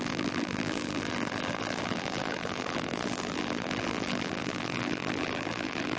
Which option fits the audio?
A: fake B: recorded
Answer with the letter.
A